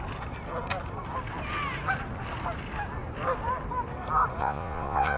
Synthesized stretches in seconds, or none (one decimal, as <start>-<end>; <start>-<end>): 4.4-5.2